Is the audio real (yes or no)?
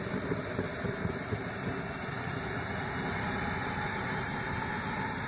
yes